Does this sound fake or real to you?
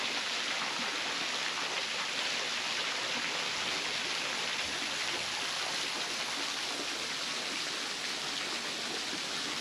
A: real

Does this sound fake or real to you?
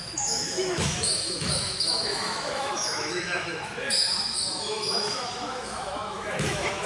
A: fake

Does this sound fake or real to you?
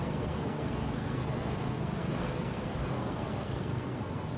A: fake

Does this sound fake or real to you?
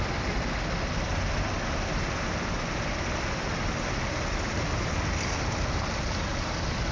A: real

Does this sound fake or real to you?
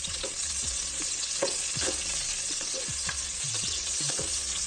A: fake